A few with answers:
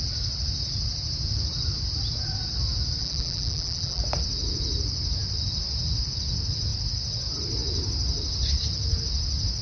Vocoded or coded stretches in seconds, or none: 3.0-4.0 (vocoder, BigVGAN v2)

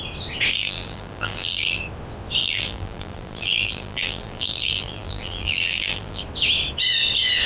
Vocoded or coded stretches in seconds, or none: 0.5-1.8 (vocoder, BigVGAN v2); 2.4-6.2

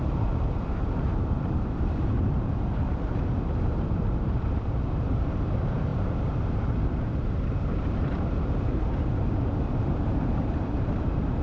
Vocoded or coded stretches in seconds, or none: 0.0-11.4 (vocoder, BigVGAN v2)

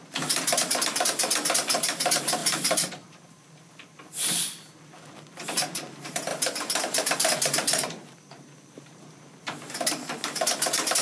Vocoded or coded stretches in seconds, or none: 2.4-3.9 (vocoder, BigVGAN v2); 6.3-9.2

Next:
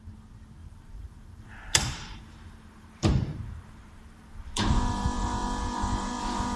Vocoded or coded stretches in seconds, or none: 0.6-4.6 (vocoder, BigVGAN v2)

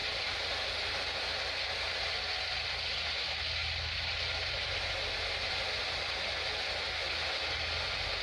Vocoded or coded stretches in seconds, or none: none

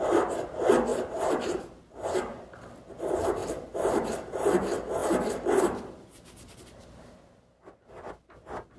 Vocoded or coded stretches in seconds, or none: 0.9-1.6 (vocoder, BigVGAN v2); 3.4-4.5

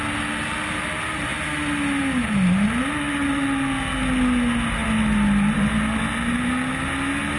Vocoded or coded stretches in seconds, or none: none